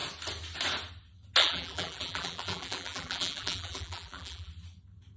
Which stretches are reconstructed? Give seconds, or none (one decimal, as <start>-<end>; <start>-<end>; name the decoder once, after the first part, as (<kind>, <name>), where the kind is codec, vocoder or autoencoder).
1.4-4.5 (vocoder, BigVGAN v2)